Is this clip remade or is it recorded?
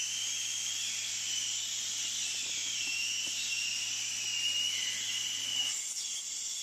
recorded